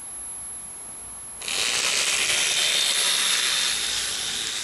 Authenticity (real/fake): real